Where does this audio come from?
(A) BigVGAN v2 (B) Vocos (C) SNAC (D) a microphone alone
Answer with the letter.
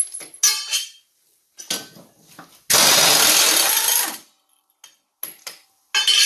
D